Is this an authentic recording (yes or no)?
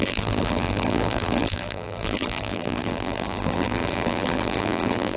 no